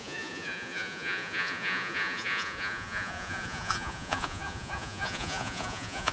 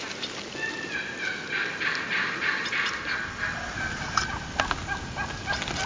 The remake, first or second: first